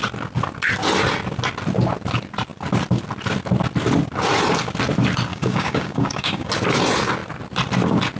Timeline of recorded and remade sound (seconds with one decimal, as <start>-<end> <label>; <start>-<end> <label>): 0.0-5.3 recorded; 5.3-6.5 remade; 6.5-8.2 recorded